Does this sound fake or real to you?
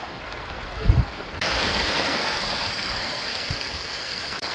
fake